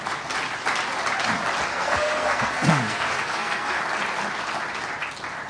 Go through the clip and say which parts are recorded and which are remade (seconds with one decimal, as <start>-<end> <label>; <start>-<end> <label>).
0.0-1.7 recorded; 1.7-3.8 remade; 3.8-5.5 recorded